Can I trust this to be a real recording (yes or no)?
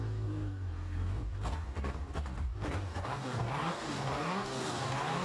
no